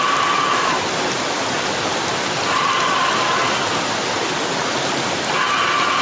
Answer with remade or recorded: recorded